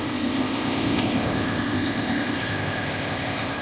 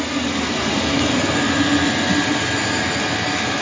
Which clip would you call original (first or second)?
second